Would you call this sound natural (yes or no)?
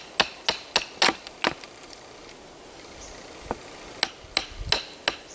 yes